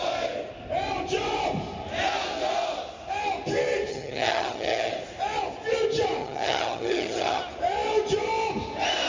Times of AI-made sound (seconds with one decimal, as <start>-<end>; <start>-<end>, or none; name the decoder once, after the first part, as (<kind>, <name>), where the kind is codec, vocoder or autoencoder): 3.9-4.9 (vocoder, HiFi-GAN); 6.2-7.4